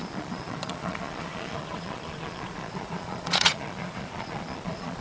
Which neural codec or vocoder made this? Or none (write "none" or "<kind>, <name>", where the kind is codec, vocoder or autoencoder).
vocoder, Vocos